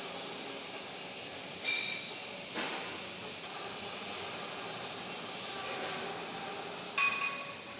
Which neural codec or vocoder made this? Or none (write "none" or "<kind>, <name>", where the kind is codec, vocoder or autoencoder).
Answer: none